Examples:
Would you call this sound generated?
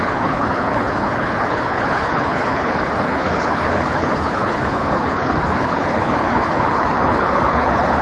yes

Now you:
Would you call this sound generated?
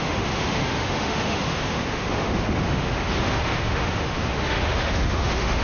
yes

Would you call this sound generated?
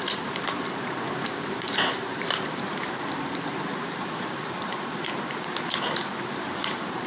yes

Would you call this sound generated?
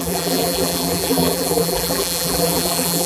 yes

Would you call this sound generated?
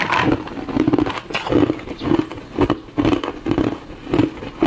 no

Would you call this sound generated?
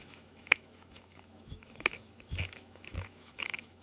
yes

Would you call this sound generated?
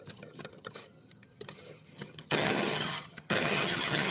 yes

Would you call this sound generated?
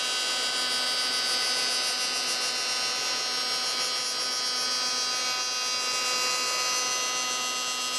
no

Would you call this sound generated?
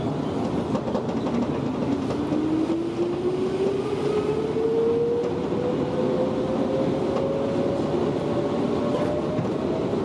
no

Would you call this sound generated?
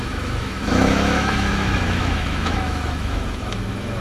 yes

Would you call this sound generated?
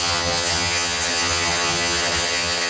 yes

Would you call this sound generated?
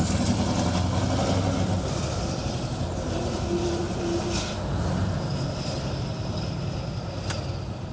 no